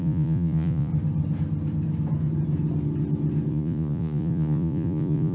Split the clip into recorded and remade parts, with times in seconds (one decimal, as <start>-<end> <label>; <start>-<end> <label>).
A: 0.0-0.9 remade; 0.9-3.5 recorded; 3.5-5.3 remade